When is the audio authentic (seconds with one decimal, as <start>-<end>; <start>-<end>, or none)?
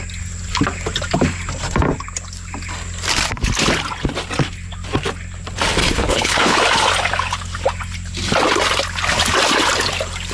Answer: 0.0-5.8; 6.6-10.3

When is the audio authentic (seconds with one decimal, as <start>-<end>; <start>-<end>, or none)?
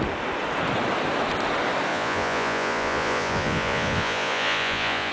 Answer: 0.0-1.9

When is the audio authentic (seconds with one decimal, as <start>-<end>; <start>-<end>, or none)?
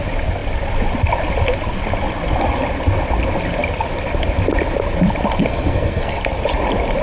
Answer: 0.0-5.4; 6.2-7.0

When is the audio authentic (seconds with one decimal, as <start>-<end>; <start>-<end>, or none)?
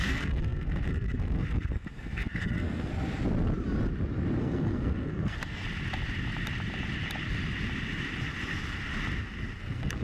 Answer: 2.9-4.4; 5.6-9.6